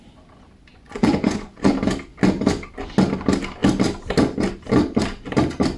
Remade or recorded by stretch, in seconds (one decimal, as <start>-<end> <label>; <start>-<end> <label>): 0.0-0.7 recorded; 0.7-1.7 remade; 1.7-5.8 recorded